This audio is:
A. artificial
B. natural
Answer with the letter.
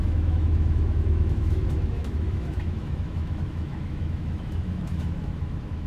A